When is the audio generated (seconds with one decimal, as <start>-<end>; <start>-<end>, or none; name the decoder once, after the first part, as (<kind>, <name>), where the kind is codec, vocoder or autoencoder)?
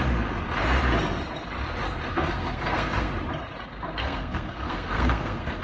2.1-3.1 (codec, SNAC); 4.0-5.6